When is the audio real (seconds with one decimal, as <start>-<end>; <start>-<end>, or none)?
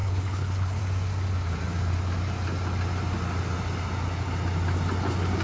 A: 0.8-5.4